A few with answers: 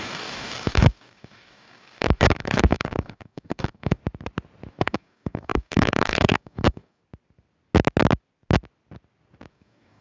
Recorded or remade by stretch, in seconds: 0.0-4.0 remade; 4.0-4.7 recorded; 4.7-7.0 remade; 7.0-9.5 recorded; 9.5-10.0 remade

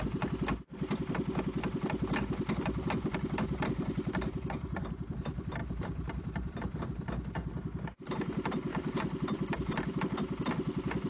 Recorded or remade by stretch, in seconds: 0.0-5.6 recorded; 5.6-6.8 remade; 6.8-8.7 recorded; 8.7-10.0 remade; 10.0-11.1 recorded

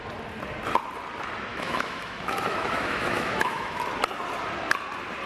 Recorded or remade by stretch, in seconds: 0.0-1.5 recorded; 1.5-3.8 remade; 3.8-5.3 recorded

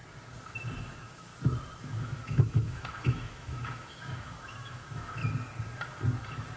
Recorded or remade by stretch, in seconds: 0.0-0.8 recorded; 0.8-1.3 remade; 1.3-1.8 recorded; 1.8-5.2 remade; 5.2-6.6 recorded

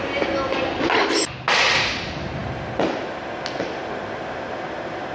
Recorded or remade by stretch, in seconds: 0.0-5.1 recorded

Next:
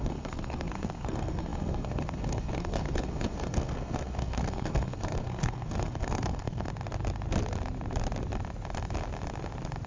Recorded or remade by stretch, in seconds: 0.0-6.7 remade; 6.7-9.9 recorded